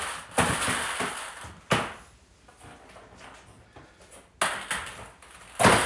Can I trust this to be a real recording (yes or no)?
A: yes